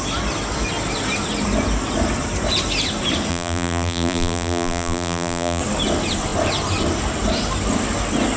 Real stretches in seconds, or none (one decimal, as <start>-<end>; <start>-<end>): 0.0-3.3; 5.6-8.4